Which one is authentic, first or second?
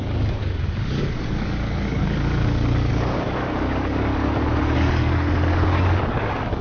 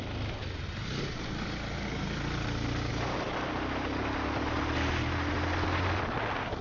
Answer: second